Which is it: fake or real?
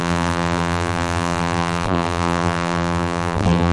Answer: fake